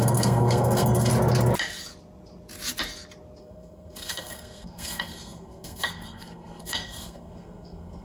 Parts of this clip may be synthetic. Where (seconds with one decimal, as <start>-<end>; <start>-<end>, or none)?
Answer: 0.0-1.1; 3.4-8.0